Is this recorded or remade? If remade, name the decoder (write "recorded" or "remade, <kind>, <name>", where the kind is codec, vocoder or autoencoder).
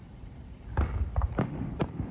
remade, vocoder, BigVGAN v2